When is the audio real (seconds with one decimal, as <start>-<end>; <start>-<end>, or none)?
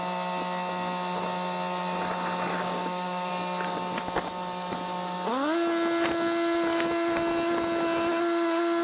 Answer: 0.0-2.5; 3.3-8.8